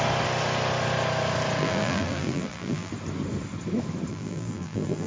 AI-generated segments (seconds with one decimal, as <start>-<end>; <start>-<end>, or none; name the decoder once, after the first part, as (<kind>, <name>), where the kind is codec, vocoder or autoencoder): 1.6-2.9 (vocoder, BigVGAN v2); 4.1-5.1